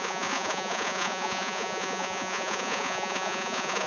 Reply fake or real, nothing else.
fake